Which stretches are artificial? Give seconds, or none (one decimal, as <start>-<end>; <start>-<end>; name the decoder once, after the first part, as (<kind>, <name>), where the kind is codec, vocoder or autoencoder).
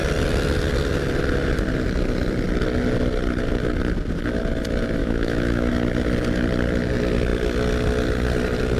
5.0-5.7 (autoencoder, DAC-VAE)